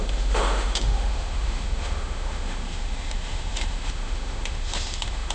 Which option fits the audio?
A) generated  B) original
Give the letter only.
A